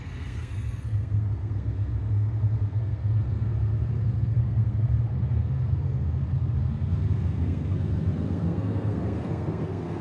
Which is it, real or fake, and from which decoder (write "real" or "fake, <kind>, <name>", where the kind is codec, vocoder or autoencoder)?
fake, codec, SNAC